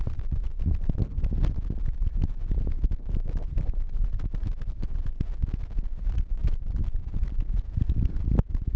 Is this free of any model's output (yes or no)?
yes